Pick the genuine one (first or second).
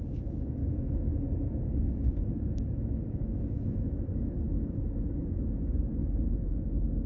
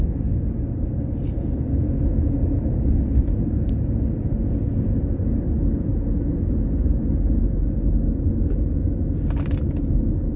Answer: second